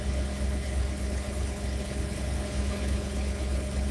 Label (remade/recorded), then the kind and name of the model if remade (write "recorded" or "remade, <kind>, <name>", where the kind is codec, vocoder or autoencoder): remade, codec, HILCodec